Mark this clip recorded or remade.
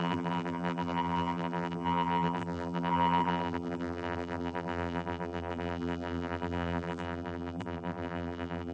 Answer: remade